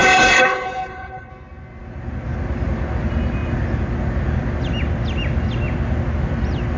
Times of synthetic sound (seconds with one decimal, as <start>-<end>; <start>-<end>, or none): 0.0-1.3